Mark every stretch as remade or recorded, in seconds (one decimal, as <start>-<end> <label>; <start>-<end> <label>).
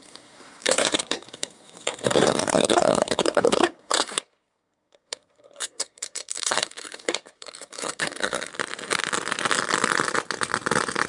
0.0-8.5 remade; 8.5-11.1 recorded